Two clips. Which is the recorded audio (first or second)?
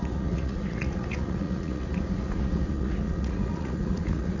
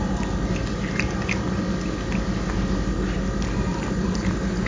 second